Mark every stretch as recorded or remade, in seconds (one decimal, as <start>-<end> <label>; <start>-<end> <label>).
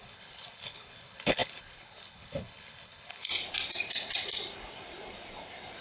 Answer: 0.0-3.3 remade; 3.3-5.8 recorded